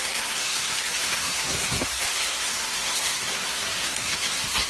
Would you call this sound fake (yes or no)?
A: yes